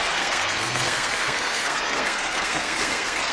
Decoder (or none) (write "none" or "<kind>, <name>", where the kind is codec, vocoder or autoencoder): codec, SNAC